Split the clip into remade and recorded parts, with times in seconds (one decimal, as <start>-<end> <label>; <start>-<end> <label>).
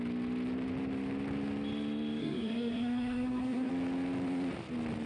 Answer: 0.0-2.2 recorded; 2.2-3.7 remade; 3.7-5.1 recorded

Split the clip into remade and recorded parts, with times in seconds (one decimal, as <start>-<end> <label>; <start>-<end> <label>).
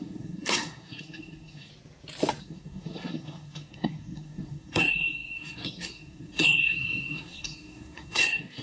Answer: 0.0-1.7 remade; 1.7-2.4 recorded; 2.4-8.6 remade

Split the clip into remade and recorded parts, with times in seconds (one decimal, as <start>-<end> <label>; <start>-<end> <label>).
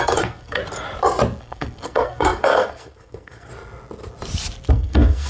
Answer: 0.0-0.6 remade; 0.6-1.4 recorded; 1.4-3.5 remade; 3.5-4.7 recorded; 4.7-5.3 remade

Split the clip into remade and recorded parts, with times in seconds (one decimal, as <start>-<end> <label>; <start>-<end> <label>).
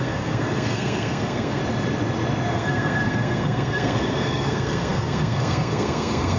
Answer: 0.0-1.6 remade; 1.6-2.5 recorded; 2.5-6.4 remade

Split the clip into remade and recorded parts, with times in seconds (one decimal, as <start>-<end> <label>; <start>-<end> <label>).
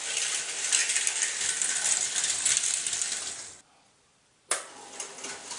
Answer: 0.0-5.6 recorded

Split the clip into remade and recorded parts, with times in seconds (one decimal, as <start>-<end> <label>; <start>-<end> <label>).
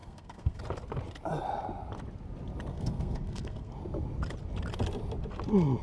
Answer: 0.0-0.6 remade; 0.6-2.7 recorded; 2.7-3.7 remade; 3.7-5.8 recorded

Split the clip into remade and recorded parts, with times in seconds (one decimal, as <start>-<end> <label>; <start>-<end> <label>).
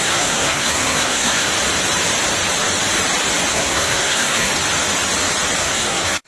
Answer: 0.0-1.5 remade; 1.5-3.5 recorded; 3.5-4.5 remade; 4.5-5.6 recorded; 5.6-6.3 remade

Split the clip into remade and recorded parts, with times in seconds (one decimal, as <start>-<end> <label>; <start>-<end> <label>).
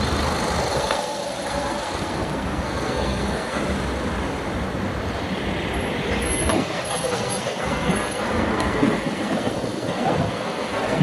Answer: 0.0-0.7 recorded; 0.7-3.6 remade; 3.6-6.2 recorded; 6.2-11.0 remade